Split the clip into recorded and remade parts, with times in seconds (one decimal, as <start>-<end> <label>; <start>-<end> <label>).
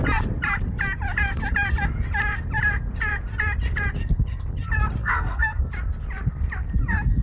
0.0-5.0 recorded; 5.0-5.6 remade; 5.6-7.2 recorded